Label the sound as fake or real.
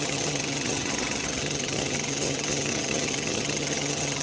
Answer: fake